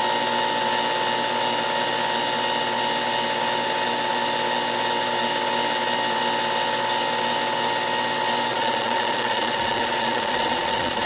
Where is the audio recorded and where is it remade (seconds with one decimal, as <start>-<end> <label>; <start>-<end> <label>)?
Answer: 0.0-8.5 recorded; 8.5-11.1 remade